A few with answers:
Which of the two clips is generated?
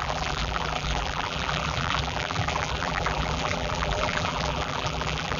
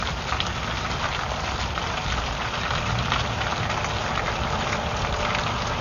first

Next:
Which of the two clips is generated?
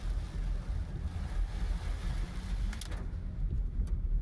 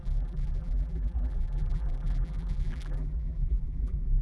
second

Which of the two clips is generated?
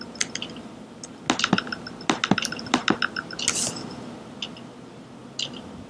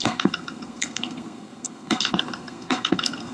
second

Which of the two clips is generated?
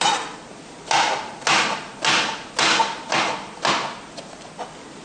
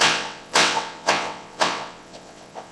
second